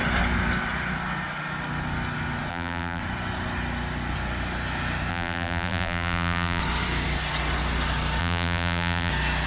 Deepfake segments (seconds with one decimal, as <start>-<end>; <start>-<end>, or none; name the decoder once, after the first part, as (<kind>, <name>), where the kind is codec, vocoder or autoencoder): 2.5-3.0 (vocoder, BigVGAN v2); 5.1-6.6; 8.2-9.1